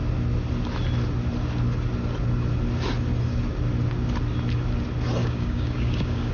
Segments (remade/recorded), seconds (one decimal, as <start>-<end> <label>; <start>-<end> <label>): 0.0-5.2 recorded; 5.2-6.3 remade